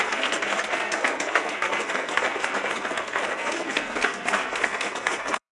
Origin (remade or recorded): remade